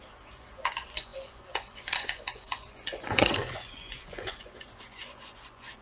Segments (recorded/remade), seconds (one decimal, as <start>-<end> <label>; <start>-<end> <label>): 0.0-5.8 remade